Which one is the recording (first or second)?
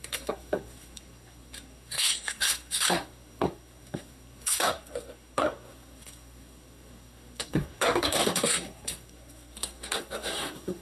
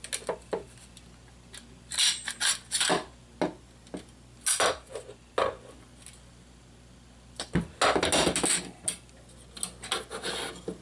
second